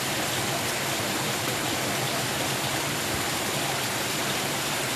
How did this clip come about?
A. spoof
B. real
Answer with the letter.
B